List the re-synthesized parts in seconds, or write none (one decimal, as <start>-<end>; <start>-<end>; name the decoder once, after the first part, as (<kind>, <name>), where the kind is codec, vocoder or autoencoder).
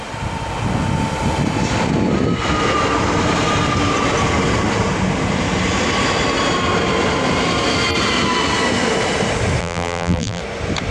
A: 9.6-10.4 (vocoder, BigVGAN v2)